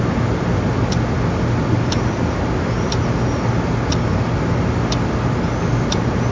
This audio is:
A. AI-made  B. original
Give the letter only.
B